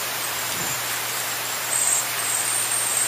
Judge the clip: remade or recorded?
remade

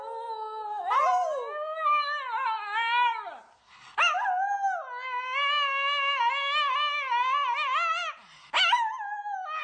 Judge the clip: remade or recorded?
recorded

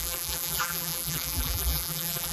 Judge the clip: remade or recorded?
remade